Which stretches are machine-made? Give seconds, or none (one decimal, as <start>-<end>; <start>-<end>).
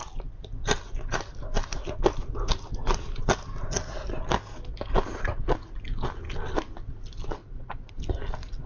7.4-8.0